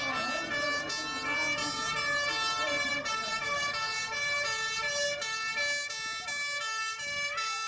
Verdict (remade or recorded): recorded